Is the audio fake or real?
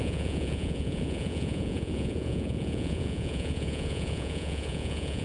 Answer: fake